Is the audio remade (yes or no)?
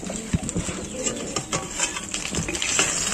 no